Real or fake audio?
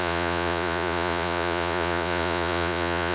fake